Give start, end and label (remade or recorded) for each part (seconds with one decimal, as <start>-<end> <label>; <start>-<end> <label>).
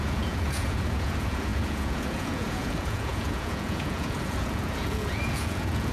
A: 0.0-5.9 remade